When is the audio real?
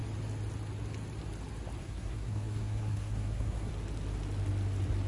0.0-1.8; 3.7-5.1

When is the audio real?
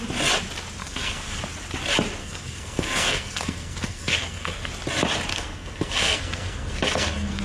0.0-0.8; 1.4-2.2; 4.7-5.3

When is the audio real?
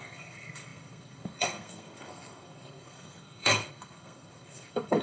none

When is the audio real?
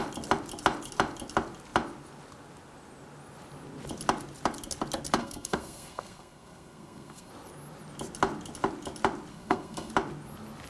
0.0-5.2; 7.3-9.3; 9.9-10.7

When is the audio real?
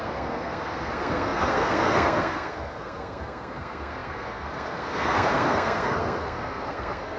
none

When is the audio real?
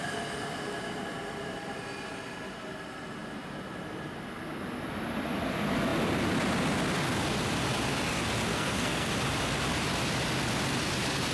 0.0-8.5; 9.1-11.3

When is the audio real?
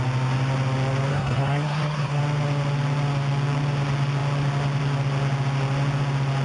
0.0-1.1; 2.2-6.4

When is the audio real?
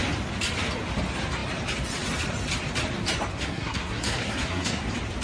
0.0-3.3; 4.8-5.2